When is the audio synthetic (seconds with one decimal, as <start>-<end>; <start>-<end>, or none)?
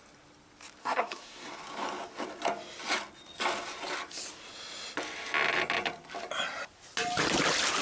0.8-1.6